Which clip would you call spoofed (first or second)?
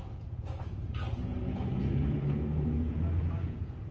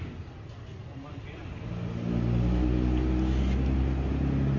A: first